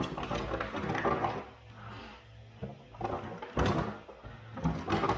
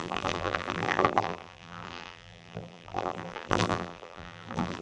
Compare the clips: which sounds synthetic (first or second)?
second